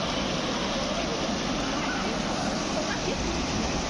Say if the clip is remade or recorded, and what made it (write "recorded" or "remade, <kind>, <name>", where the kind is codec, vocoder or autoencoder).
recorded